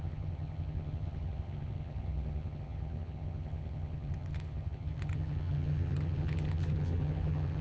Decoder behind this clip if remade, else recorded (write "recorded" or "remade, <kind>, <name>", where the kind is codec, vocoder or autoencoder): remade, vocoder, HiFi-GAN